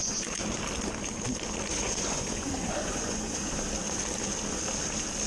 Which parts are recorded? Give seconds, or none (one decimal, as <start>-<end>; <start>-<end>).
0.4-1.7; 3.4-5.3